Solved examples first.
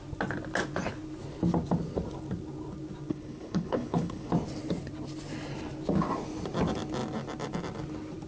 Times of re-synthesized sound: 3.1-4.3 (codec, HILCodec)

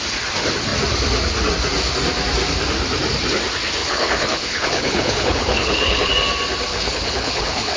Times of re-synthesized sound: 3.8-6.1 (codec, HILCodec); 6.7-7.8

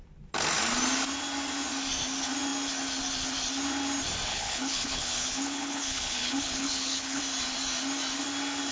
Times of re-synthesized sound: 4.3-7.2 (codec, HILCodec)

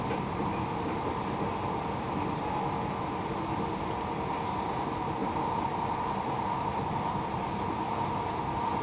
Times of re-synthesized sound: none

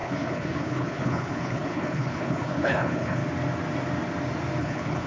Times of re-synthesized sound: 0.0-3.2 (codec, HILCodec); 4.6-5.1

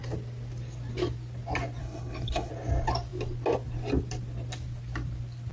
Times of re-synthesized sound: 1.8-2.5 (codec, HILCodec)

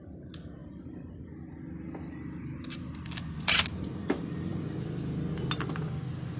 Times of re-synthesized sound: none